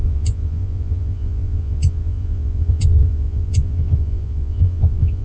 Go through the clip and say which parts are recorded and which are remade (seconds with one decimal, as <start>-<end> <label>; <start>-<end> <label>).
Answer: 0.0-5.2 remade